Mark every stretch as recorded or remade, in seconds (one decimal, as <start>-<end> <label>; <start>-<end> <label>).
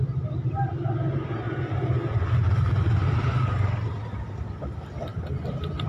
0.0-5.9 recorded